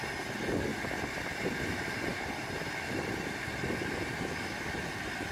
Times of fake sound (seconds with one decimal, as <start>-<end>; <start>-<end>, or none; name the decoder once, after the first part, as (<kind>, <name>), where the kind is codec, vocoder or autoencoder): 2.1-4.8 (vocoder, BigVGAN v2)